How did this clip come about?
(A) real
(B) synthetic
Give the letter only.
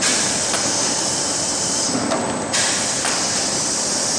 B